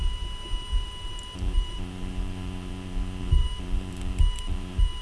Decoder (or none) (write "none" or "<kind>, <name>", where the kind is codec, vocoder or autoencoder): vocoder, BigVGAN v2